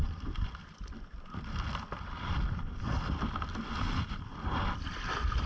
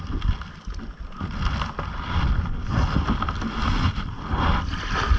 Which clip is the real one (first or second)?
second